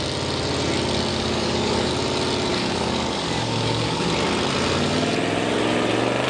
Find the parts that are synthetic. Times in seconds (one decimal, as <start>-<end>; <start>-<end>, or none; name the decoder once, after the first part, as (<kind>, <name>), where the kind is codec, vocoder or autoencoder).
1.1-1.9 (codec, DAC); 2.5-4.1